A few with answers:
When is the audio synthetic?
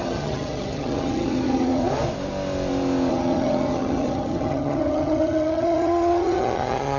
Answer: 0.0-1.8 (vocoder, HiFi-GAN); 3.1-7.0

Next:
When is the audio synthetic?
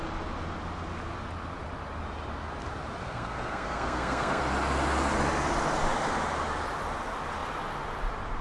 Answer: 3.0-4.4 (codec, SNAC)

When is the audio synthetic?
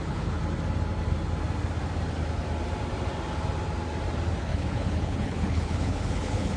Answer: 0.0-0.4 (codec, HILCodec); 4.4-6.6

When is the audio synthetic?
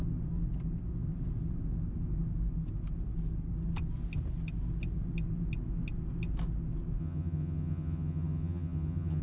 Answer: 7.0-9.2 (vocoder, HiFi-GAN)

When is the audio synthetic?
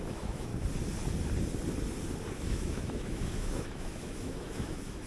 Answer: 0.0-0.5 (autoencoder, DAC-VAE); 2.3-5.1